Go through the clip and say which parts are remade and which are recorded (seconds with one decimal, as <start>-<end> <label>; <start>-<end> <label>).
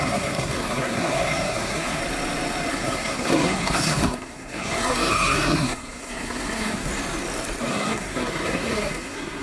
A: 0.0-2.0 remade; 2.0-2.7 recorded; 2.7-6.9 remade; 6.9-7.7 recorded; 7.7-9.4 remade